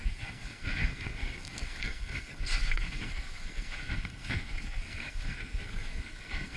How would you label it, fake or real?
fake